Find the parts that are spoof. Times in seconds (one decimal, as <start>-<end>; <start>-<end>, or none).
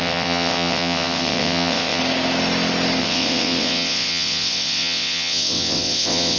0.0-2.0; 3.0-6.4